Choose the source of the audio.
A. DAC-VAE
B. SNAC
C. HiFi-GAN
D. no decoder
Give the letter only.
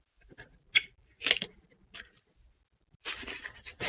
D